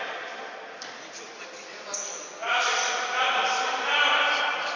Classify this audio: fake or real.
fake